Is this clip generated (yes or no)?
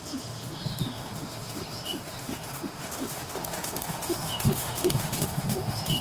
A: yes